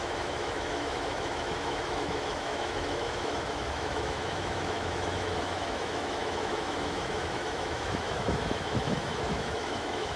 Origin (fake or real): fake